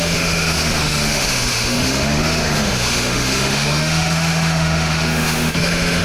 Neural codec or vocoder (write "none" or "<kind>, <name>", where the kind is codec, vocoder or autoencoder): autoencoder, DAC-VAE